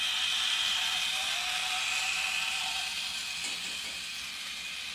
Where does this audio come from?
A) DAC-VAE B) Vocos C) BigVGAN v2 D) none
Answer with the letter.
D